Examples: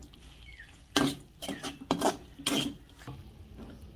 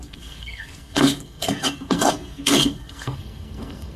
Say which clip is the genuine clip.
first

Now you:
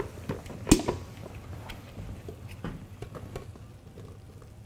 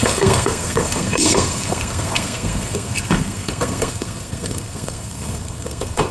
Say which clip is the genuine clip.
first